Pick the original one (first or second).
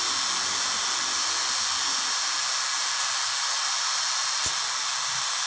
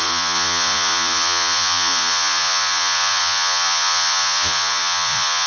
first